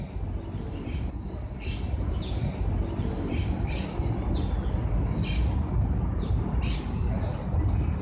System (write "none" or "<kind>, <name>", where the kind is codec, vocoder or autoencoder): none